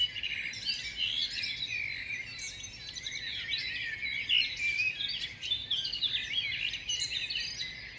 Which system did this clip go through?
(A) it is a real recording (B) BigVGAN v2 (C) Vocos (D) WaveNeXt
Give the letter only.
A